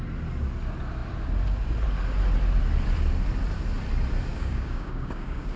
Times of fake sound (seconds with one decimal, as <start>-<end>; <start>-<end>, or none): 4.3-5.6